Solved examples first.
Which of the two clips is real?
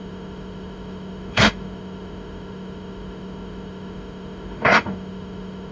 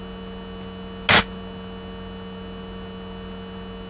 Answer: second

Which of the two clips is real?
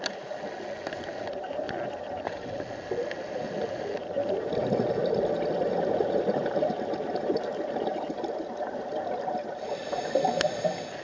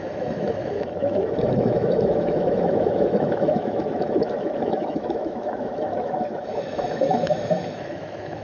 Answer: first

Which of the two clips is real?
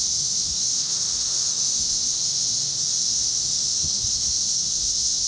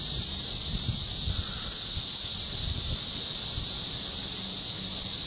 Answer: second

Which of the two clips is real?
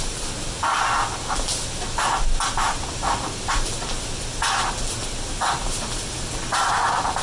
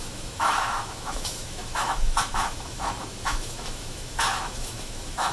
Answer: first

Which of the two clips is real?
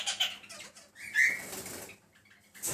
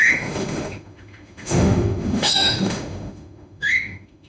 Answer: first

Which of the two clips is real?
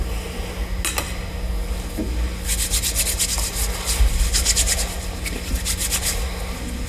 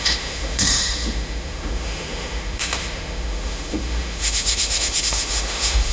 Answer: first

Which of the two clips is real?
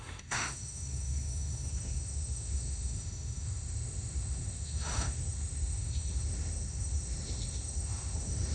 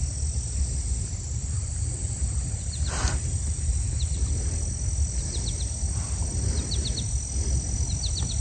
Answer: second